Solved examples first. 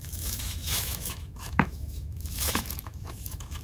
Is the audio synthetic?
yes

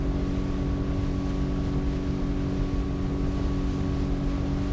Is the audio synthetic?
no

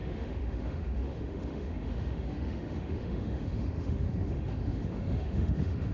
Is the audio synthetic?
yes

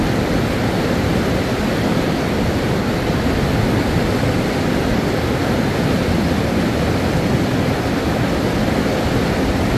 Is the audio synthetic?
no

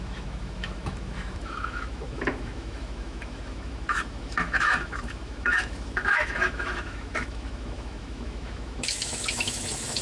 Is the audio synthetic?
yes